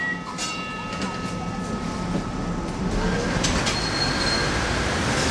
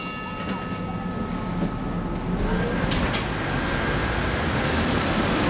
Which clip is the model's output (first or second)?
first